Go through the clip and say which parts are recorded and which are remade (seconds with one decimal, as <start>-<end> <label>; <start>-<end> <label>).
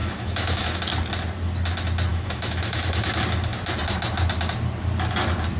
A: 0.0-0.8 remade; 0.8-2.1 recorded; 2.1-3.1 remade; 3.1-5.6 recorded